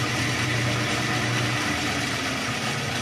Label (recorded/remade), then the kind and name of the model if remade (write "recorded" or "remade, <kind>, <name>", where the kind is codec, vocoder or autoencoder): recorded